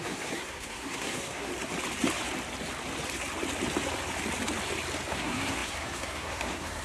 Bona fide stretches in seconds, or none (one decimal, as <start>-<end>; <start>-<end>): 1.5-5.1